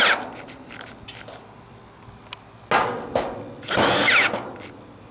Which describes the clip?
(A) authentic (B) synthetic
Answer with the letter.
A